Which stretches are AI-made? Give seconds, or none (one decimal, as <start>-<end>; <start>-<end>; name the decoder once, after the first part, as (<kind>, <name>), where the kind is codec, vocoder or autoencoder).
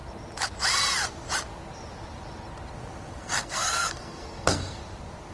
3.2-4.8 (codec, SNAC)